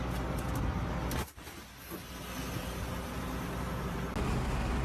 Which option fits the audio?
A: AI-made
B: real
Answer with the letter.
B